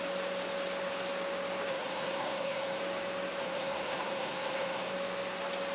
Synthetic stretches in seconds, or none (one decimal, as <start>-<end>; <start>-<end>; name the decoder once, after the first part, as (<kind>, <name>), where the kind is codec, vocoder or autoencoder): 1.7-2.8 (codec, SNAC); 3.4-4.9